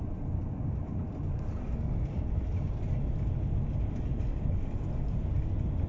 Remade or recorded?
recorded